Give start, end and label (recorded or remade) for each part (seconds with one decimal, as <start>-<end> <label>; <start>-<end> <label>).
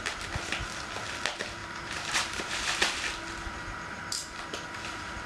0.0-1.6 recorded; 1.6-2.8 remade; 2.8-5.3 recorded